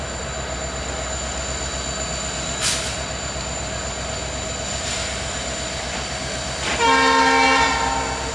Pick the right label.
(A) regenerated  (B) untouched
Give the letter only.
B